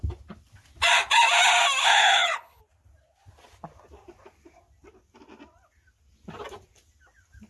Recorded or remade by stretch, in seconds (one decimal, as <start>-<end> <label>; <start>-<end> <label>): 0.0-1.8 recorded; 1.8-2.6 remade; 2.6-7.5 recorded